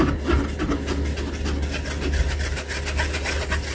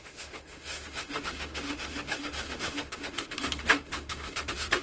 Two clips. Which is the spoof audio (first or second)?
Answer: second